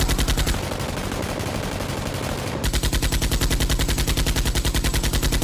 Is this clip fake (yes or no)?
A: no